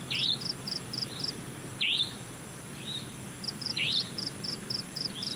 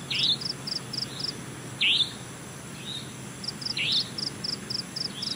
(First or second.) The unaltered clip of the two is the second